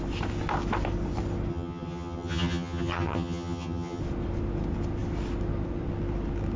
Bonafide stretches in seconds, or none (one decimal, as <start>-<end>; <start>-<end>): 0.0-1.5; 4.0-6.6